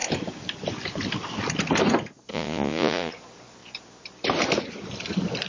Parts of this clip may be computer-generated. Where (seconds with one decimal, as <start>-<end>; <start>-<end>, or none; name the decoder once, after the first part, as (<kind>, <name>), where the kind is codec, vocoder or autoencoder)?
2.3-3.1 (vocoder, Vocos)